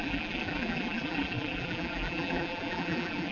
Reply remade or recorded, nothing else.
remade